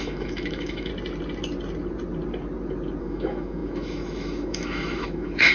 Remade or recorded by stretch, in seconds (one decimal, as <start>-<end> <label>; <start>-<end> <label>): 0.0-0.9 remade; 0.9-3.0 recorded; 3.0-5.5 remade